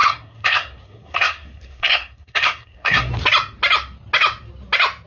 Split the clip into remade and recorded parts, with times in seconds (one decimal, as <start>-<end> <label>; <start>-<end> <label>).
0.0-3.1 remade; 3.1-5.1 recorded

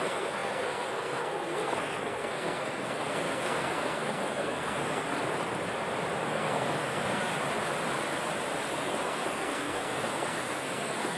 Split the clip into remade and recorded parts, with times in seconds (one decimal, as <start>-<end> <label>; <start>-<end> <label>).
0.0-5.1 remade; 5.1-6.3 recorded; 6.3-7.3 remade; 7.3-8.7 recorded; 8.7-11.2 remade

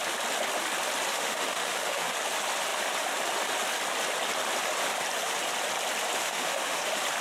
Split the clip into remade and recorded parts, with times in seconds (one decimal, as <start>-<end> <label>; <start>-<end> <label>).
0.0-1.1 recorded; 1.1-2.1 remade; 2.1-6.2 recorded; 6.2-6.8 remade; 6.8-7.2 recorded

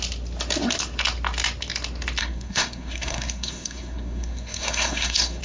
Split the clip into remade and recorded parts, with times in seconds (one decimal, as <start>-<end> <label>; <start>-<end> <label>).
0.0-2.2 recorded; 2.2-5.4 remade